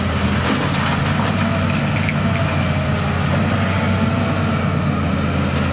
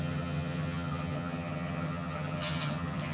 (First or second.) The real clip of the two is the first